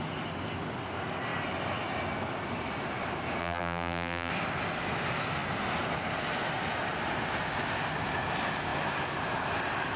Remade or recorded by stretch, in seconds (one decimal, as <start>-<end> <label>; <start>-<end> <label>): 0.0-3.4 recorded; 3.4-4.3 remade; 4.3-10.0 recorded